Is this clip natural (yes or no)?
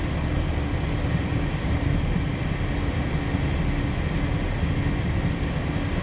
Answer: yes